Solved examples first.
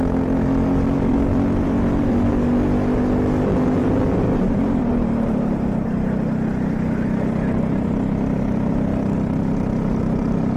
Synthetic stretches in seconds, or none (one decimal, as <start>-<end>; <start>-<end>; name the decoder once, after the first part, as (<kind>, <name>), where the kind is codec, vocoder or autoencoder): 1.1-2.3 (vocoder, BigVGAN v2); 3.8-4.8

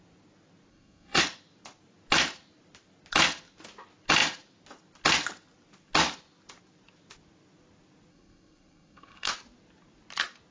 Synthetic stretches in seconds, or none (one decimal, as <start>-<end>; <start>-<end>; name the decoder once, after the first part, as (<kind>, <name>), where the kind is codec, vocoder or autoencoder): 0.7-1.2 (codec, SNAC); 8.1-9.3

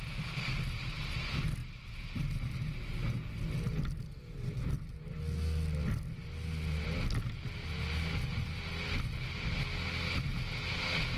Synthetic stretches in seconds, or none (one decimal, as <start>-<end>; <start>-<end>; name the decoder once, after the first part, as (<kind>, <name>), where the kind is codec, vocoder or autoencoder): none

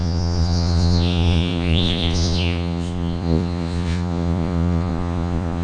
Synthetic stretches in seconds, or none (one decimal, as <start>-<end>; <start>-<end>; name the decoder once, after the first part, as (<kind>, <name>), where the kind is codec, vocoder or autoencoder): 0.0-5.6 (vocoder, Vocos)

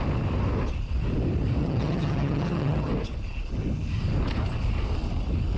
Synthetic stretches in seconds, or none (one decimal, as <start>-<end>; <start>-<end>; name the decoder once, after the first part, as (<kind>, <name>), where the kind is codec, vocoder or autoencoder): 1.6-2.9 (vocoder, HiFi-GAN)

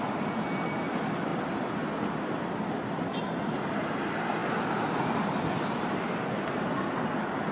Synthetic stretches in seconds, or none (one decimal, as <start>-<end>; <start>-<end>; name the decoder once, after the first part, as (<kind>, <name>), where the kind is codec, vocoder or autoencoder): none